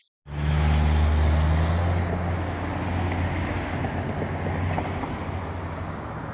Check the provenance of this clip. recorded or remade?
recorded